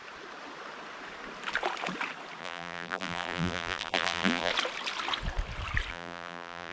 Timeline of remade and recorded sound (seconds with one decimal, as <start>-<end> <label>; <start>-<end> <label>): 0.0-2.4 recorded; 2.4-4.5 remade; 4.5-5.9 recorded; 5.9-6.7 remade